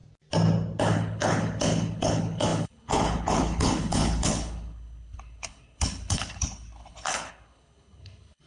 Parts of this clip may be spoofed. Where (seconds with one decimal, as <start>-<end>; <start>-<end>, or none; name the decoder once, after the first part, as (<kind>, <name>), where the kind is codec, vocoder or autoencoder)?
0.8-8.5 (codec, HILCodec)

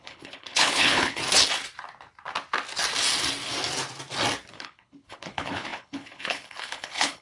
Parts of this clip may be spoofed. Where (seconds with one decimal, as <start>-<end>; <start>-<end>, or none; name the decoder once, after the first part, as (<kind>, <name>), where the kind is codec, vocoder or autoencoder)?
0.0-1.2 (codec, HILCodec); 4.5-7.2